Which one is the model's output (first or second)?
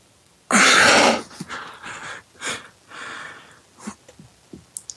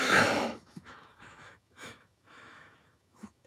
second